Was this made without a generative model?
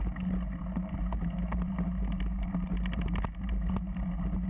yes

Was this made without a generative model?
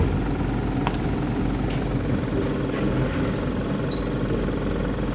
yes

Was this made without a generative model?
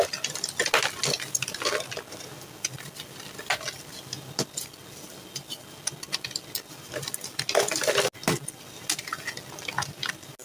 yes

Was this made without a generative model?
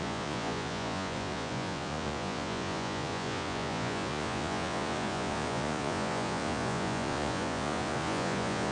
no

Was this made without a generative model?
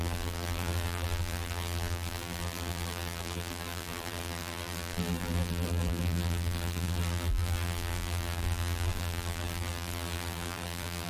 no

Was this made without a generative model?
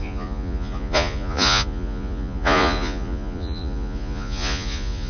no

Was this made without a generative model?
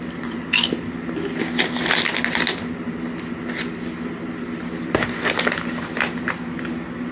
yes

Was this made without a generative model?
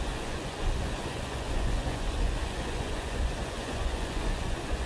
no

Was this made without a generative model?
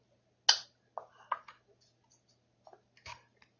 yes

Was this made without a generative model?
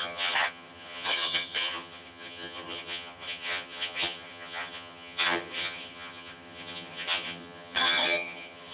no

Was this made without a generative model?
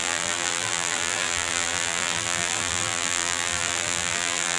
no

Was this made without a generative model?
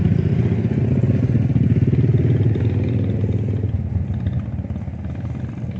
yes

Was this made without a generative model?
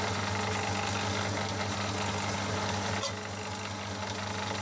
yes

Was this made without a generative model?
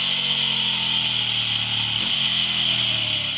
yes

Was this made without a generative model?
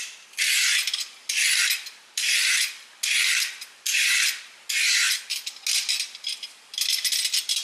yes